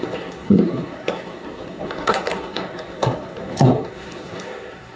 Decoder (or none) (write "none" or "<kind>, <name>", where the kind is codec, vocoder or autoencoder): codec, SNAC